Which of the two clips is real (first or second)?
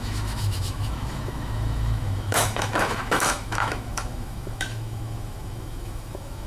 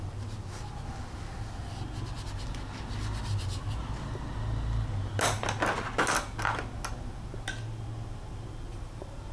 second